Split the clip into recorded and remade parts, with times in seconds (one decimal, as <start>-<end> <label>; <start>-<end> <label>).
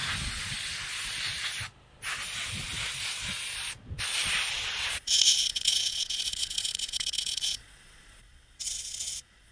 0.0-4.5 recorded; 4.5-9.5 remade